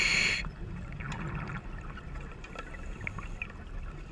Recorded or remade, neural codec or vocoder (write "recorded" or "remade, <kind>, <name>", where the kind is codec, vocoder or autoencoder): recorded